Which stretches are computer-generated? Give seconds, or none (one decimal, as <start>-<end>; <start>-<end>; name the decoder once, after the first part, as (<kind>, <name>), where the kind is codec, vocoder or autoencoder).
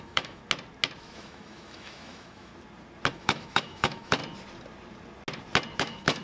0.0-0.4 (autoencoder, DAC-VAE); 1.0-2.5; 3.1-4.2; 5.8-6.2